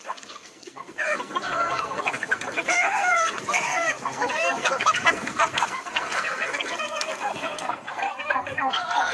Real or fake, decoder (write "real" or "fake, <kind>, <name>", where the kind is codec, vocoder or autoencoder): fake, codec, SNAC